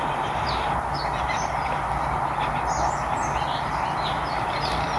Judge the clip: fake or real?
real